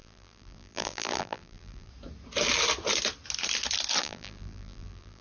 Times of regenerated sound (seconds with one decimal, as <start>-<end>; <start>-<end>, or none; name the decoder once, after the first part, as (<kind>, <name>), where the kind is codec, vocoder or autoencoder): 0.0-1.9 (vocoder, BigVGAN v2); 4.0-5.2